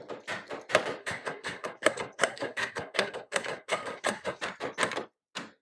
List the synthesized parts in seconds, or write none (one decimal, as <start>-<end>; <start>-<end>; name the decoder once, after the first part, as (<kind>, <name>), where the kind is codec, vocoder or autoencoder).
1.0-4.4 (codec, SNAC)